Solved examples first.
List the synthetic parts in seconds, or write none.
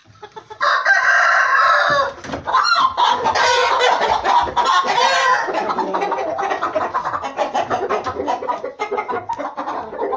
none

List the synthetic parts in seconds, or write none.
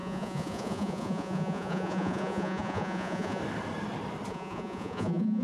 0.0-3.4 (vocoder, Vocos); 4.3-5.4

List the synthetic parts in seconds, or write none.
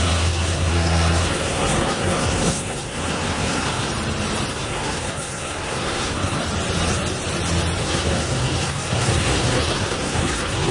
0.0-3.9 (codec, SNAC); 4.5-6.4; 7.8-10.7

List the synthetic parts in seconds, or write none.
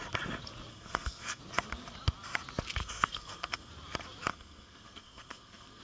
0.7-1.4 (codec, SNAC); 2.8-3.7; 4.3-5.8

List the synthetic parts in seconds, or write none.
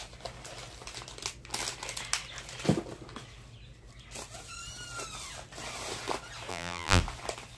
6.5-7.0 (vocoder, BigVGAN v2)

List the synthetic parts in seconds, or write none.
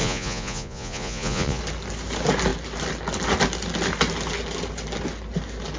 0.0-1.6 (vocoder, Vocos)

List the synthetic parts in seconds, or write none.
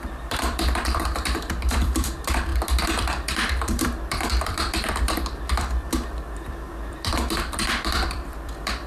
0.0-8.9 (vocoder, BigVGAN v2)